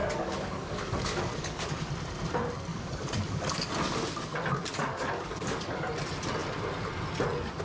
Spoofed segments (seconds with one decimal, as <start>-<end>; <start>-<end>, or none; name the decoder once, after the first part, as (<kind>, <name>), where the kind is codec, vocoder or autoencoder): 0.0-1.9 (codec, DAC); 2.7-3.7; 4.7-5.9